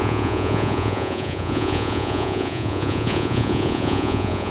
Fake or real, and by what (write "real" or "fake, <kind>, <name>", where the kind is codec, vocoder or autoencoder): fake, vocoder, Vocos